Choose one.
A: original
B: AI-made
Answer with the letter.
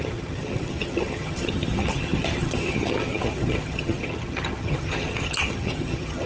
B